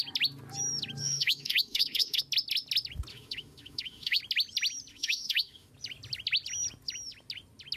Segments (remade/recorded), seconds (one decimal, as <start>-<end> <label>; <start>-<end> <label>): 0.0-1.0 recorded; 1.0-2.2 remade; 2.2-3.1 recorded; 3.1-4.2 remade; 4.2-4.9 recorded; 4.9-5.7 remade; 5.7-7.8 recorded